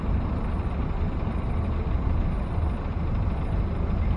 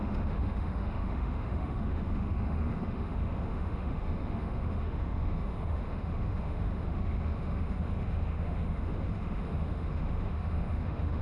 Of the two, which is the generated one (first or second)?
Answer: second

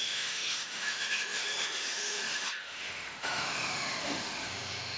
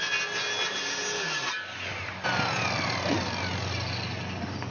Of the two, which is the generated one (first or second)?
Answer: first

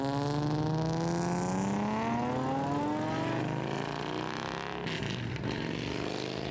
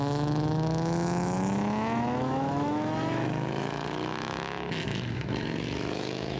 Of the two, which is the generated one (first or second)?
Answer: second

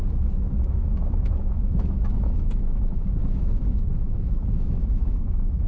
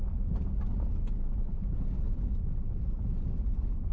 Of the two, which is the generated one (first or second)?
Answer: first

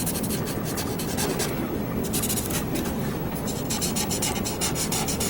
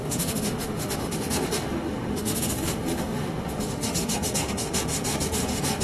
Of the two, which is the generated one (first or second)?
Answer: second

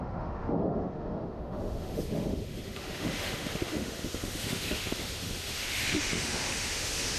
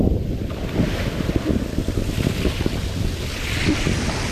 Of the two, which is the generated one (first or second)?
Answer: first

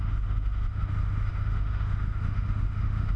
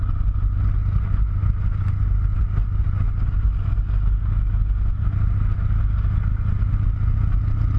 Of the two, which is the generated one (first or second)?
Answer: first